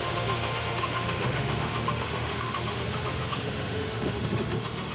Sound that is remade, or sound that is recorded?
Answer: remade